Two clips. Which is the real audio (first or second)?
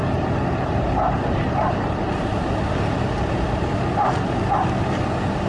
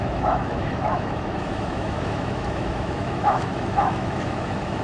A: first